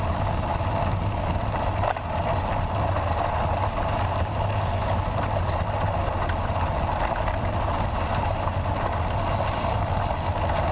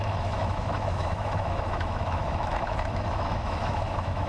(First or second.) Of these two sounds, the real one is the first